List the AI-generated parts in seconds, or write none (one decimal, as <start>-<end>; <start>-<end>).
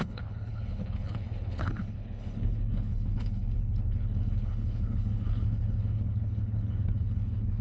0.0-7.6